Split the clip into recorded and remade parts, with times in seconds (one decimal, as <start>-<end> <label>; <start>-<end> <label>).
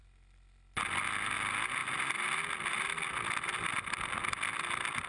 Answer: 0.0-5.1 recorded